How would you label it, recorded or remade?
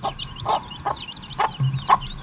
recorded